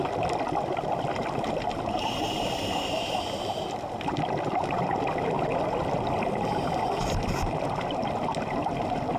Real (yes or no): yes